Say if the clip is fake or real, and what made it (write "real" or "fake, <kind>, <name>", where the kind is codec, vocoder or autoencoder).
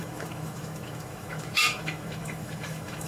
fake, autoencoder, DAC-VAE